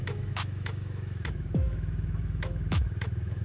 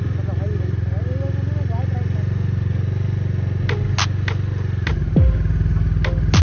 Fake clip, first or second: first